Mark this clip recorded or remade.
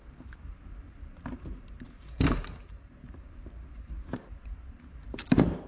remade